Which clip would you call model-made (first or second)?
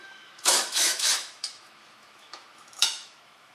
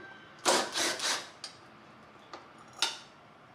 first